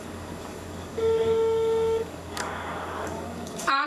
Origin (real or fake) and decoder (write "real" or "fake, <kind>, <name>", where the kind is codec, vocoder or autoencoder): fake, codec, DAC